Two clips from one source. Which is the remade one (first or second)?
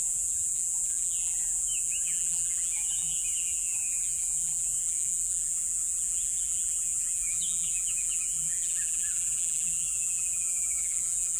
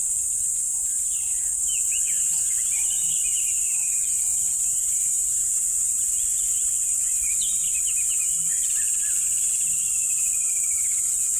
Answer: first